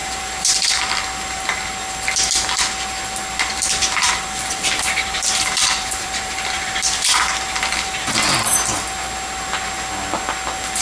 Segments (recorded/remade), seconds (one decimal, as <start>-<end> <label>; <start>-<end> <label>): 0.0-0.7 remade; 0.7-3.5 recorded; 3.5-8.1 remade; 8.1-10.8 recorded